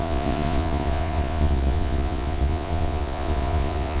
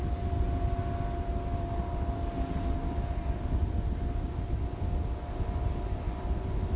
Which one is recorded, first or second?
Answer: second